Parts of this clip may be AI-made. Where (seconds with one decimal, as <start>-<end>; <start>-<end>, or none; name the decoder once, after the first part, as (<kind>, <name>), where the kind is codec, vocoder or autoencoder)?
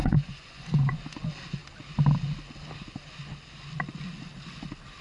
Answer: 0.0-1.0 (vocoder, Vocos)